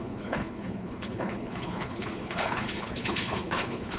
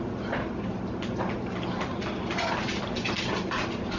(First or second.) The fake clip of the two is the first